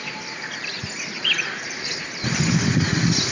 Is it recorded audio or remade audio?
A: recorded